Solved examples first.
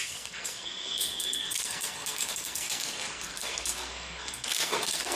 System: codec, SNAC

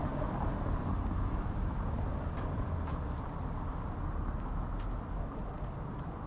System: none